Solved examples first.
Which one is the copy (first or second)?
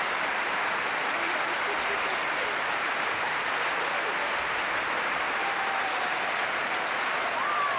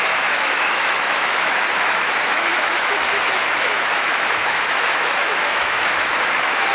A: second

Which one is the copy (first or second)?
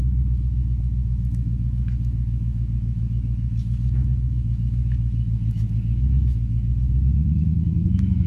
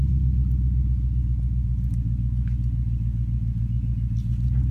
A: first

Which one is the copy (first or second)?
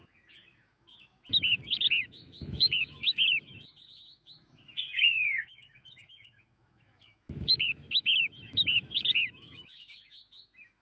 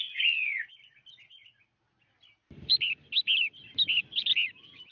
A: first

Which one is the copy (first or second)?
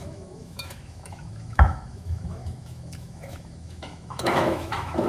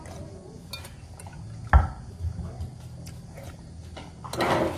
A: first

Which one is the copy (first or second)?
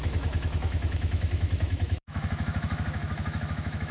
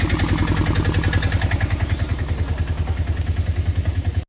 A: first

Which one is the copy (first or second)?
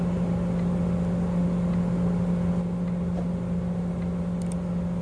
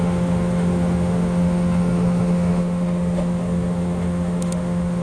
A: second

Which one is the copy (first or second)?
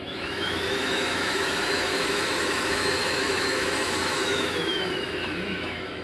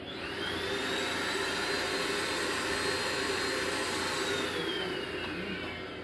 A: first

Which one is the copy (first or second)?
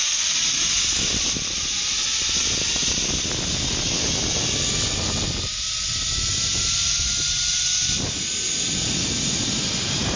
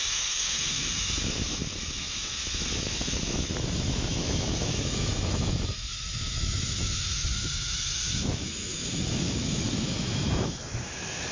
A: second